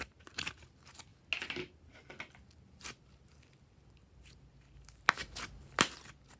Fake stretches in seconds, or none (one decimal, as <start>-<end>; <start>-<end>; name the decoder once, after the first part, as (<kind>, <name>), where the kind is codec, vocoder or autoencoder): none